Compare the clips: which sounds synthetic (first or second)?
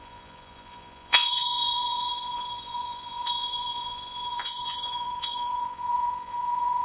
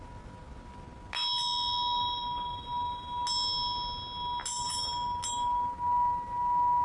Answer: first